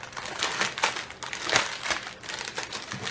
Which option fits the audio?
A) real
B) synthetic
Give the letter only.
A